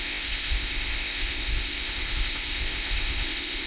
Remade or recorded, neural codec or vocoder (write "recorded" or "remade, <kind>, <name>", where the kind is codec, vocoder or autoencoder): remade, codec, ZipCodec